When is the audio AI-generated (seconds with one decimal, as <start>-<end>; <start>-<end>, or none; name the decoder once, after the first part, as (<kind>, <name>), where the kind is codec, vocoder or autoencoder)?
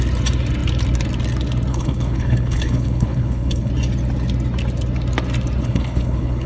1.7-3.7 (codec, HILCodec); 5.6-6.5